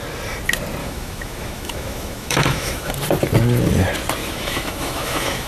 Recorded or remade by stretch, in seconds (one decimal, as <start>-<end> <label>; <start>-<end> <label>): 0.0-0.8 recorded; 0.8-2.9 remade; 2.9-4.2 recorded; 4.2-5.5 remade